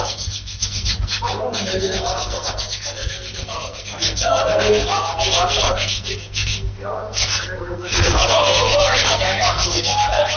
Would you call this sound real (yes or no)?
no